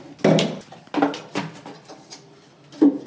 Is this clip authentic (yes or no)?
yes